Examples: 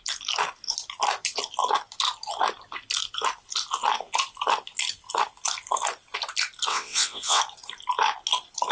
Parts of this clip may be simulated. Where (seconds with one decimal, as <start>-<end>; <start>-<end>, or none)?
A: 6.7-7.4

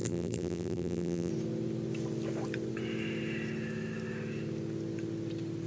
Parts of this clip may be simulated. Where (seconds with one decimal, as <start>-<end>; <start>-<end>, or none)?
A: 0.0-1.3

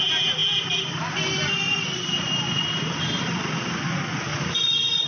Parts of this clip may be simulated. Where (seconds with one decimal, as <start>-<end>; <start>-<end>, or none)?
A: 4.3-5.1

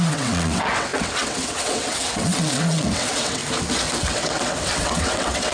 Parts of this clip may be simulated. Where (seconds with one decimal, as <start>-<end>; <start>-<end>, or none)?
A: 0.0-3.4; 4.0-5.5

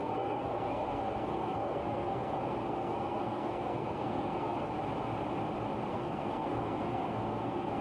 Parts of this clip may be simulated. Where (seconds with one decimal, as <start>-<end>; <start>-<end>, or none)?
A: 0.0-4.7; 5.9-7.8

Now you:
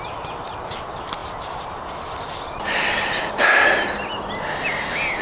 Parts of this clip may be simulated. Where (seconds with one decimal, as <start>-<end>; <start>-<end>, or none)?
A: none

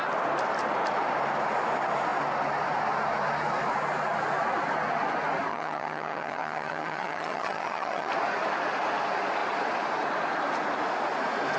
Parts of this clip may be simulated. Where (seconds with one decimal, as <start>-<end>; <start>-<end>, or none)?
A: 5.5-8.1